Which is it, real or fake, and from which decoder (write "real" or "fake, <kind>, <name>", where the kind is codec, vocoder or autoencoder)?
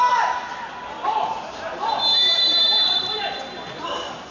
real